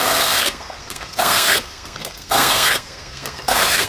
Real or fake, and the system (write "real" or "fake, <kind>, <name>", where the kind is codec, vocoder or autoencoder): fake, codec, SNAC